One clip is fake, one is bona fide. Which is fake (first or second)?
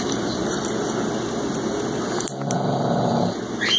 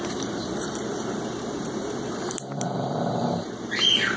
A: second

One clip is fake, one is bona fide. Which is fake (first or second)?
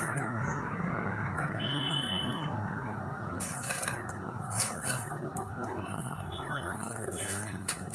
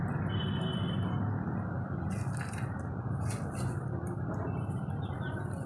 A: first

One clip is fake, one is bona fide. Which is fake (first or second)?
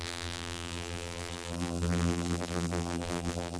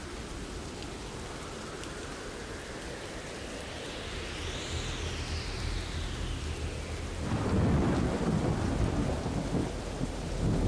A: first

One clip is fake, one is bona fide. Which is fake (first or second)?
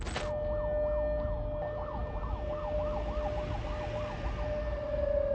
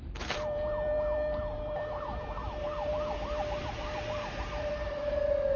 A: second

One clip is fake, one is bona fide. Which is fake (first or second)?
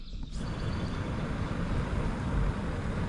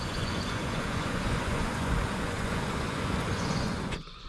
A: second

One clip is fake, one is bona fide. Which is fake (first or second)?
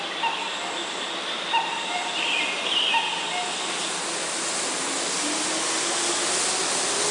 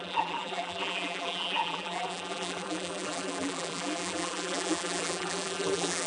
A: second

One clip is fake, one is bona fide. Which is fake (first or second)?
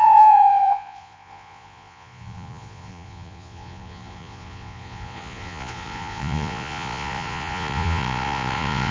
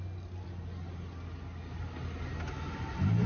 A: first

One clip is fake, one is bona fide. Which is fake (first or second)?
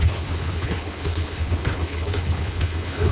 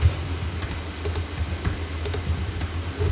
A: first